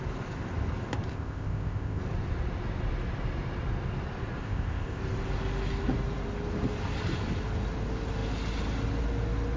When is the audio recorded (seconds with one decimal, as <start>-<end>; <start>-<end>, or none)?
0.0-1.1; 2.0-4.4; 5.0-9.6